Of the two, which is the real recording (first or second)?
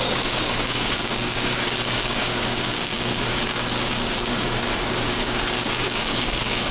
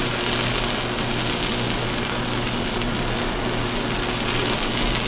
second